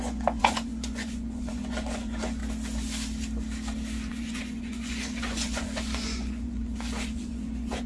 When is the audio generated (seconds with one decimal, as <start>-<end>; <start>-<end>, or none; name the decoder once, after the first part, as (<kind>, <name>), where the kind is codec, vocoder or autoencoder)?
0.0-2.4 (vocoder, Vocos); 4.1-7.9